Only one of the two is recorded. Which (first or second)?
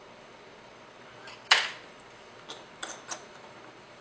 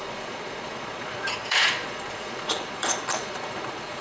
first